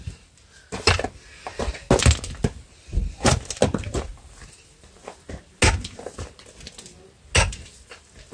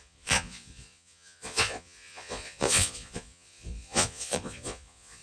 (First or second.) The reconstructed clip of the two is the second